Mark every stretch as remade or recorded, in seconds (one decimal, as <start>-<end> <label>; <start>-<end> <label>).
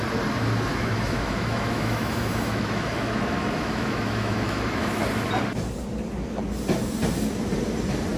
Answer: 0.0-0.7 recorded; 0.7-5.0 remade; 5.0-8.2 recorded